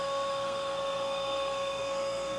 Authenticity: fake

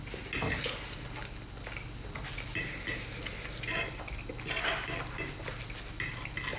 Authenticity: real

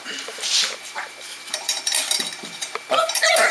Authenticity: fake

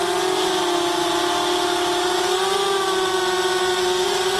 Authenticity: real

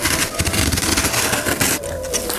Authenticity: real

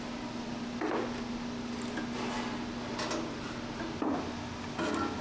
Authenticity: real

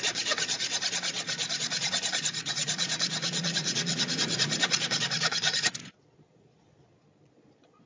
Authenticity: fake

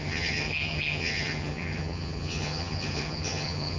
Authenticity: fake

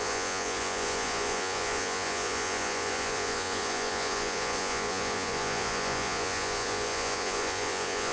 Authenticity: fake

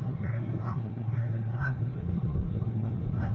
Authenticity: fake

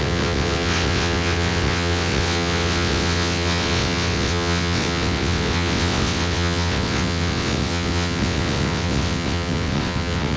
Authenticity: fake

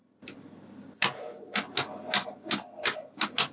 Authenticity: real